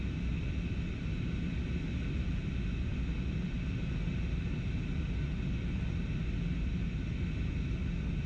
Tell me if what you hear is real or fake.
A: real